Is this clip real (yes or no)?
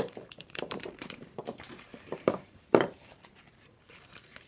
no